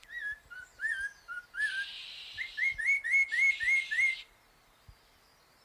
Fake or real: real